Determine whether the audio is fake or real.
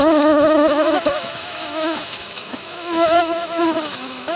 fake